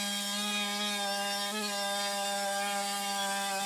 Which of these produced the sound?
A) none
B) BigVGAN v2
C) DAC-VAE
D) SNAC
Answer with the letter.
A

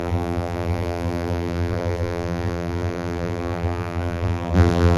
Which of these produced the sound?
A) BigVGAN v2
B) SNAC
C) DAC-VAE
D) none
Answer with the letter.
A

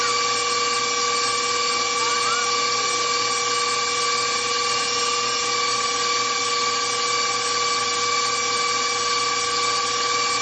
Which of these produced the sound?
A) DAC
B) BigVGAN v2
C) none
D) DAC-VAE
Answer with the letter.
C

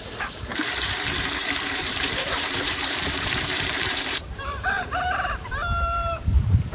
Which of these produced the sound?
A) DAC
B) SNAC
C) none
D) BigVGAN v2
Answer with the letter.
D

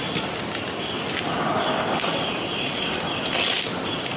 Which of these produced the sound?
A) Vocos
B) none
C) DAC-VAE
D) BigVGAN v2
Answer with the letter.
B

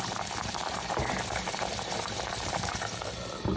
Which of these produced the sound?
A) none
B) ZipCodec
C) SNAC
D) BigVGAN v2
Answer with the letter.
D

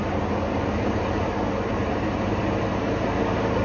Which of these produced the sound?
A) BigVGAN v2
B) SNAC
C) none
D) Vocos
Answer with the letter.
A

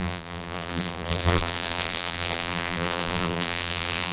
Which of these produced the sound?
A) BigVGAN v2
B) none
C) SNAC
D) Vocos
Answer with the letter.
A